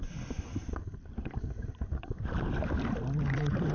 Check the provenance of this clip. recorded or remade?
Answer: recorded